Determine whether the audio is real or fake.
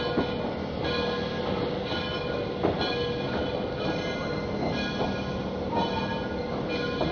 real